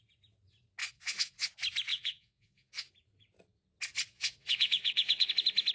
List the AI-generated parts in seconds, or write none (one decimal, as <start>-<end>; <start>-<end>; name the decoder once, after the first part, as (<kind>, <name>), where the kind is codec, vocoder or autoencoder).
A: 0.8-1.5 (vocoder, Vocos); 1.9-2.9; 4.1-5.3